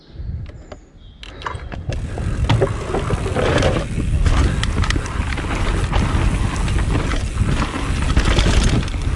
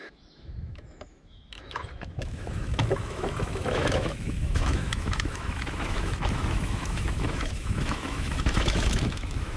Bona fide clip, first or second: first